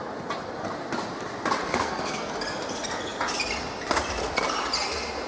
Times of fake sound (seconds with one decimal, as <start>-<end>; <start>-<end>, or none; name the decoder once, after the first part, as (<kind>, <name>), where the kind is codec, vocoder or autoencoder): 1.7-2.3 (codec, SNAC)